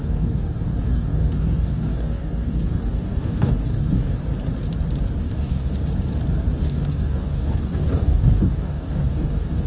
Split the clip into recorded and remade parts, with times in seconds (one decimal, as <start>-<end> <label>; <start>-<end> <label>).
0.0-4.2 remade; 4.2-5.2 recorded; 5.2-5.8 remade; 5.8-6.6 recorded; 6.6-9.7 remade